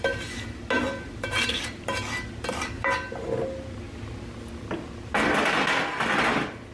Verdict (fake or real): real